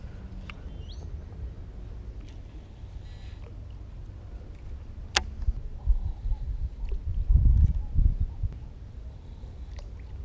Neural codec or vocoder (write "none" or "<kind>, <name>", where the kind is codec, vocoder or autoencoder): none